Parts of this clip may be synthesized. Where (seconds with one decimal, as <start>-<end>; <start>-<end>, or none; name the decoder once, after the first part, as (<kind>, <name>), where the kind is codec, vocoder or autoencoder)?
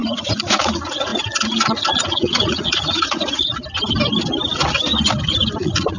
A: 0.0-3.5 (vocoder, Vocos); 5.6-6.0